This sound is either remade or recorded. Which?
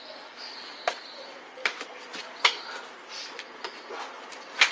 recorded